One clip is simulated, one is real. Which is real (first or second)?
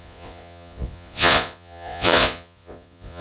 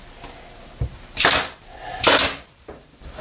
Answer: second